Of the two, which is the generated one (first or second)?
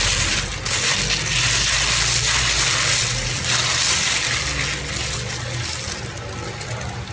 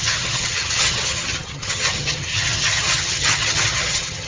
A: second